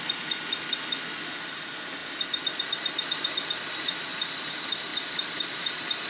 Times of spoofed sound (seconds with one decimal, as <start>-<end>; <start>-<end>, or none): none